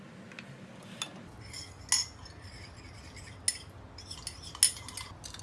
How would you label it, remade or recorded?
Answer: recorded